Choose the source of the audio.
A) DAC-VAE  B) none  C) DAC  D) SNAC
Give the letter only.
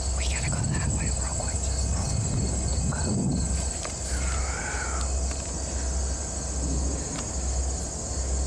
B